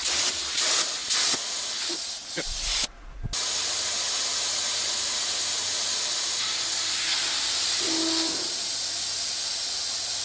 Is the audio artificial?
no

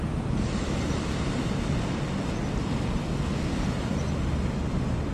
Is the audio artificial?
no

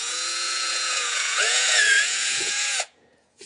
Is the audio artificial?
yes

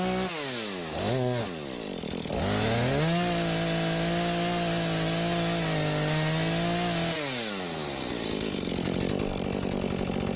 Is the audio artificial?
no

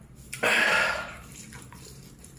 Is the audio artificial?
yes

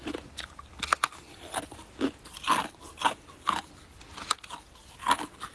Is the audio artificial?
no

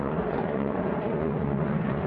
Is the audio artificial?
yes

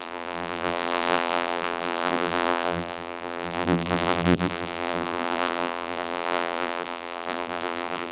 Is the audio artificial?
yes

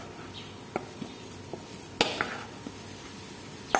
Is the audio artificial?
no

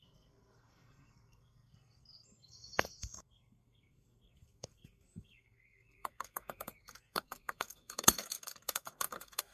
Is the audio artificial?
yes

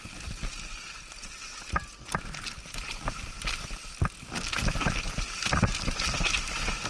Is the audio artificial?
no